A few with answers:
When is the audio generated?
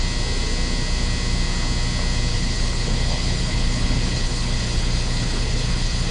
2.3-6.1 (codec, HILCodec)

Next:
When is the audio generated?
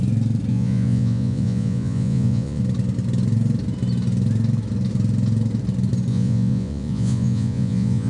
0.5-2.6 (vocoder, Vocos); 6.1-8.1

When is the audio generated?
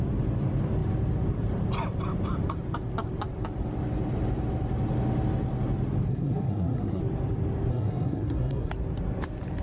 6.1-7.0 (codec, SNAC); 7.7-8.7